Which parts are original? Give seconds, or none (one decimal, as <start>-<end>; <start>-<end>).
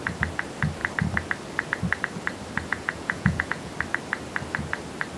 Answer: 0.0-2.7; 3.7-5.2